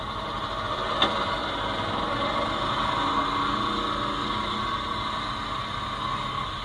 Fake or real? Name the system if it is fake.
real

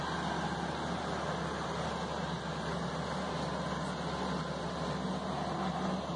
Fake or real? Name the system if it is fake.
real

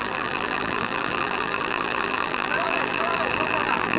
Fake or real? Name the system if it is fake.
fake, vocoder, BigVGAN v2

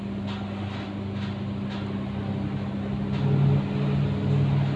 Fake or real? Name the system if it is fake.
real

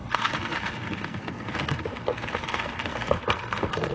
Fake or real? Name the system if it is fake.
fake, codec, SNAC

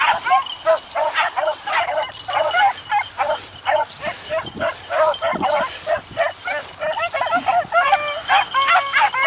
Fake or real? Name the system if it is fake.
real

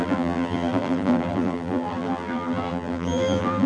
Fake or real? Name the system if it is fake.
fake, vocoder, BigVGAN v2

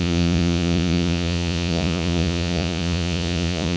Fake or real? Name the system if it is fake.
fake, vocoder, Vocos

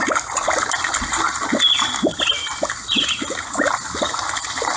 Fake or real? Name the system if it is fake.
real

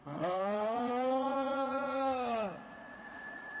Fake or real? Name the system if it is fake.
fake, vocoder, Vocos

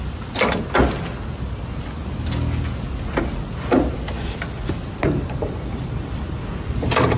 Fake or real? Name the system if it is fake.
real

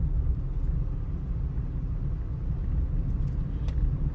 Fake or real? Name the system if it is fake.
real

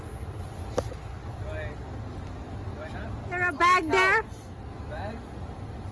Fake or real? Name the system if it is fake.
real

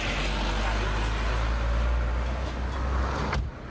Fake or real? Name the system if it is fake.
real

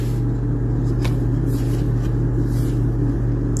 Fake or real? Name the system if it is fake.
real